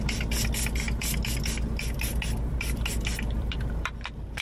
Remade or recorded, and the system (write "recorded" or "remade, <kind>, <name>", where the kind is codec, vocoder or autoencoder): recorded